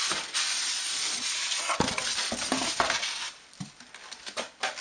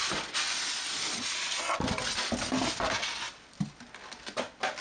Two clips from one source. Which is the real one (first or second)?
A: second